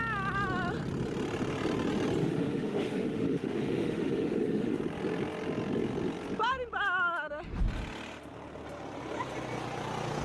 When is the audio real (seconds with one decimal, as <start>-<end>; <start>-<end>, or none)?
0.0-2.2; 4.8-10.2